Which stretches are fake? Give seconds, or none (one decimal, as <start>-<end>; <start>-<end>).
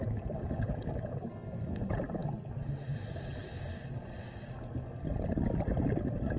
none